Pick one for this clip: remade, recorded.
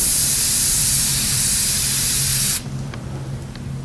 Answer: remade